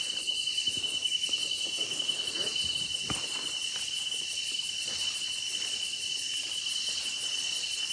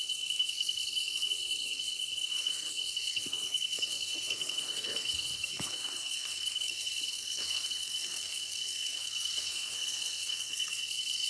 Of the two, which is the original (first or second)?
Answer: first